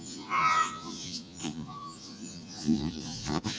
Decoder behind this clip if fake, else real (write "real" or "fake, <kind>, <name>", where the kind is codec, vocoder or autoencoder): fake, vocoder, Vocos